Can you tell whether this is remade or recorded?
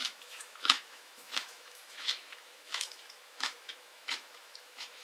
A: remade